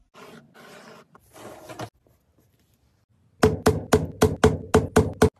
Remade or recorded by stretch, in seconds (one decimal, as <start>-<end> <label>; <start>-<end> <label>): 0.0-5.4 recorded